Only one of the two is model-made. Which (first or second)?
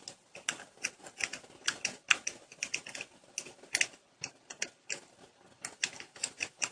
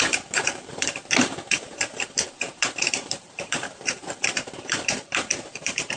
second